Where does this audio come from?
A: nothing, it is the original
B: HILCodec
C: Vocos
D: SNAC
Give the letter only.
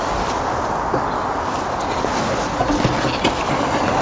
A